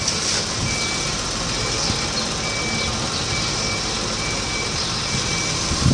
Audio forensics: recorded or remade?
recorded